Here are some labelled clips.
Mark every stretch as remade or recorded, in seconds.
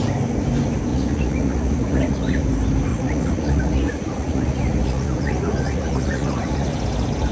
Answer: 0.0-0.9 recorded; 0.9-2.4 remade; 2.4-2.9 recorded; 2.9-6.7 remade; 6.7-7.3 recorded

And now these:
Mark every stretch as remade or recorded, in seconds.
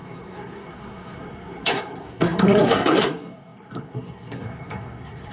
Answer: 0.0-5.3 remade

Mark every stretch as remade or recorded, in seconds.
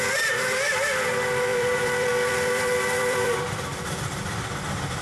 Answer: 0.0-1.5 recorded; 1.5-4.5 remade; 4.5-5.0 recorded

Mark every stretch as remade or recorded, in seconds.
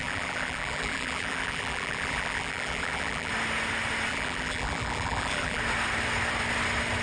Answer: 0.0-3.3 remade; 3.3-4.1 recorded; 4.1-5.6 remade; 5.6-7.0 recorded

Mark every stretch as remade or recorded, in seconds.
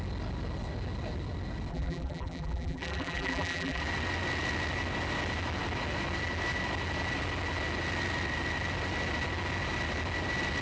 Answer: 0.0-1.7 recorded; 1.7-3.8 remade; 3.8-10.6 recorded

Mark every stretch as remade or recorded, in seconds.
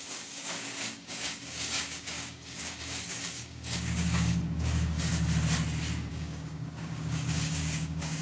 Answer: 0.0-5.1 remade; 5.1-6.1 recorded; 6.1-8.2 remade